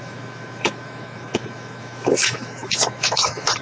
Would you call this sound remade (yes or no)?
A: yes